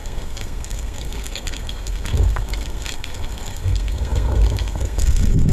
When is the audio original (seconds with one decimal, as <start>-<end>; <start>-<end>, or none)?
none